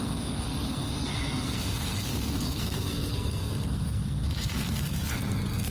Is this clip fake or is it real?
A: fake